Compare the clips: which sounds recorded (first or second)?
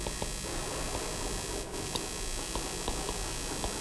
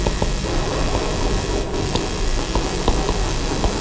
first